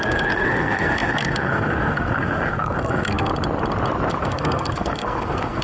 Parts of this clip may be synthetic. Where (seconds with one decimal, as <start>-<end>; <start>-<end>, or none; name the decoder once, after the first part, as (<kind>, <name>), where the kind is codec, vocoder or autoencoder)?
0.0-3.3 (codec, SNAC); 4.2-5.6